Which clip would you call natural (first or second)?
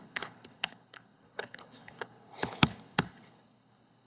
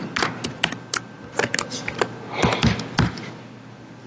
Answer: second